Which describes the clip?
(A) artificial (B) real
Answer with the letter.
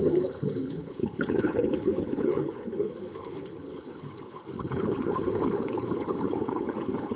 A